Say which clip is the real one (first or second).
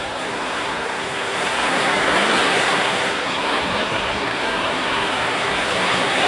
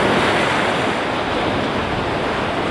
second